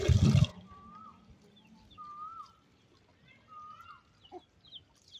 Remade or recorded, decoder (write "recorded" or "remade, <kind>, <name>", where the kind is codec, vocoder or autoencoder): recorded